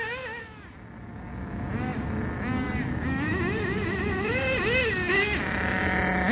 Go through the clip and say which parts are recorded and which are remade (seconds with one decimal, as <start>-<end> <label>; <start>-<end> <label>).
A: 0.0-6.3 recorded